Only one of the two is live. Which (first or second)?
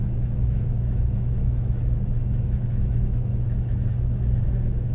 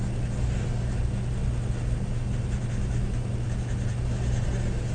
second